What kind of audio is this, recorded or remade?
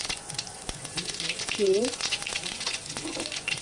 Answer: remade